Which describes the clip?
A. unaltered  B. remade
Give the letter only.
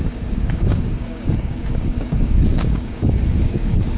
B